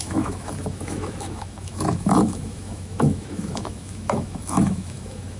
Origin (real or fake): fake